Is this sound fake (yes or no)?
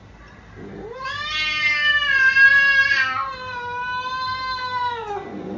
no